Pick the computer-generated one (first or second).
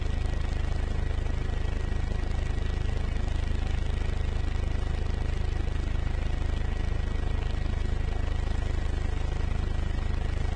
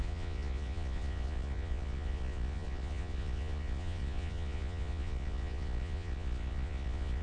second